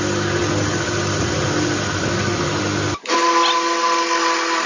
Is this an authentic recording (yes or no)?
yes